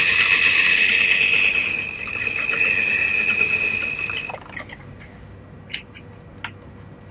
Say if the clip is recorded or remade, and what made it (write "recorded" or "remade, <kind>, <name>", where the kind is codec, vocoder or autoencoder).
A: recorded